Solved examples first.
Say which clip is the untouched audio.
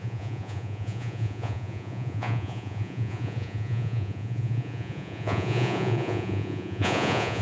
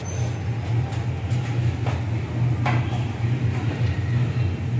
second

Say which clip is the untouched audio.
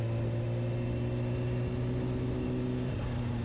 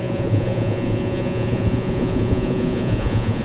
first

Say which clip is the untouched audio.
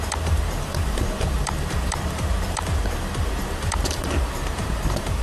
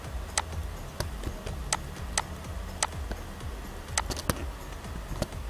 second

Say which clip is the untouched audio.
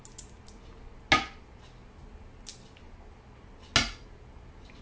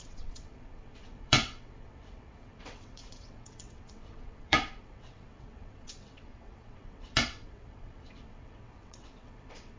first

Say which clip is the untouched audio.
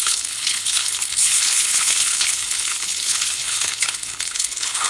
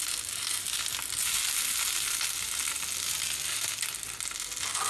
second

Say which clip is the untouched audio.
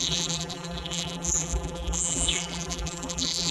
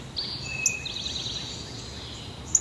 second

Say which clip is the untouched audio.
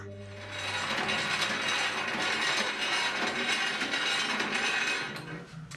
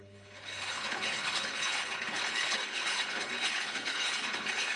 first